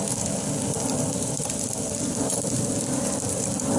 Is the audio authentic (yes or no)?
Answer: yes